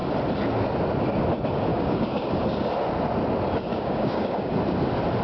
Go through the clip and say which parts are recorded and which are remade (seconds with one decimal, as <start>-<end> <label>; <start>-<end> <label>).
0.0-1.7 recorded; 1.7-2.3 remade; 2.3-3.7 recorded; 3.7-4.5 remade; 4.5-5.2 recorded